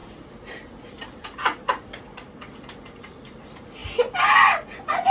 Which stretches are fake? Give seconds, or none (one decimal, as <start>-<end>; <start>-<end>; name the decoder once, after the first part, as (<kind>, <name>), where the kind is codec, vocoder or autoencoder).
none